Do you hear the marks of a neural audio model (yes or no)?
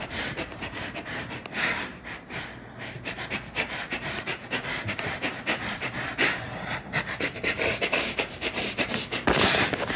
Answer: yes